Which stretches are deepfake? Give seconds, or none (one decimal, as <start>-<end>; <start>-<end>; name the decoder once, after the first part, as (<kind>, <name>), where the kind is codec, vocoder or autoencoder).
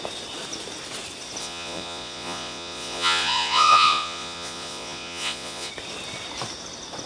1.4-5.7 (vocoder, Vocos)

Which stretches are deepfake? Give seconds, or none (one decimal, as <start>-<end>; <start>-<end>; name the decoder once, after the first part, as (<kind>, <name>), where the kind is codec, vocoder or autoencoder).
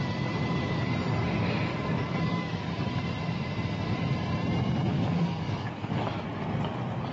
1.7-2.6 (codec, DAC); 4.9-6.2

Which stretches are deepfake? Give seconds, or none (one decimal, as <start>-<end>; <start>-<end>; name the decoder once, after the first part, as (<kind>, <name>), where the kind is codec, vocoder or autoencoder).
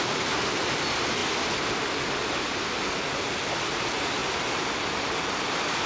none